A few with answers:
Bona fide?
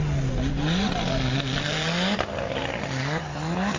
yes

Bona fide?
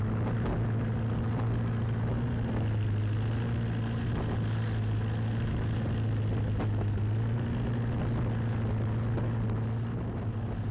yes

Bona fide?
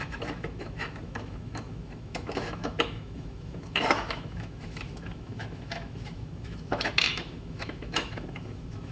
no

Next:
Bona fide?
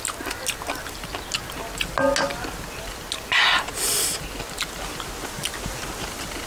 yes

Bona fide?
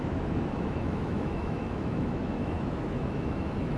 no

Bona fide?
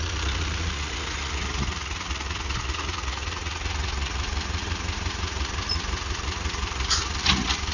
no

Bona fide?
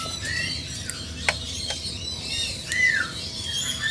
yes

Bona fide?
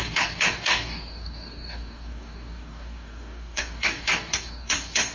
no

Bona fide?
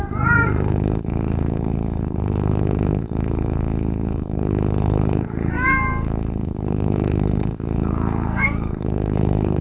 no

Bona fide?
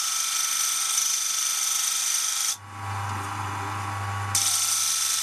yes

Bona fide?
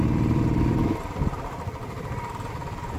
no